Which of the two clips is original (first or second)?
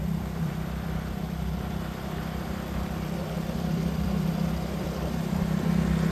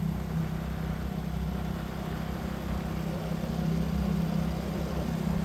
second